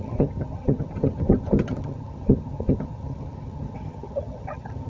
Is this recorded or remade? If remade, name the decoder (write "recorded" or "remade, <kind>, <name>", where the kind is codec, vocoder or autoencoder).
remade, vocoder, HiFi-GAN